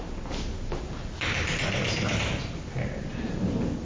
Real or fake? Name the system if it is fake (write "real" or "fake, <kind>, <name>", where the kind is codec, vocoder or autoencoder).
real